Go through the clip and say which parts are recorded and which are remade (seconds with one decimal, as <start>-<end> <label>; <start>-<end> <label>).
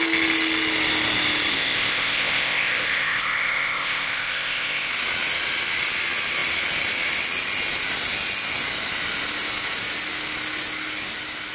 0.0-1.5 recorded; 1.5-4.9 remade; 4.9-11.5 recorded